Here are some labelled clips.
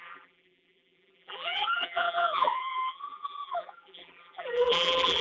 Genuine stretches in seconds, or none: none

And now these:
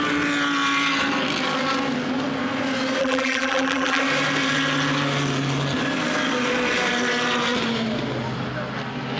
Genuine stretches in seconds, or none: 0.0-3.0; 4.0-9.2